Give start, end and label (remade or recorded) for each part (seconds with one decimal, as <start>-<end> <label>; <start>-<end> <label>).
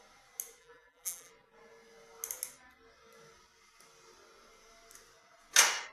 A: 0.0-0.6 recorded; 0.6-1.3 remade; 1.3-5.9 recorded